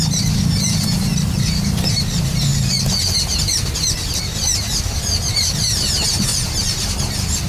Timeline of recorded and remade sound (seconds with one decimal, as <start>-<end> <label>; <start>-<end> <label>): 0.0-6.3 remade; 6.3-7.5 recorded